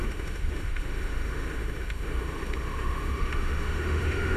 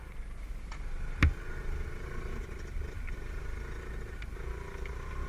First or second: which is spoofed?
first